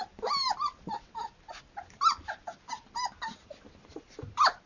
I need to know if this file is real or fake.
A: real